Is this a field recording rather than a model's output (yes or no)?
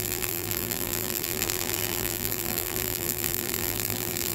no